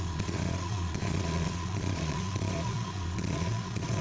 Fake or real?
fake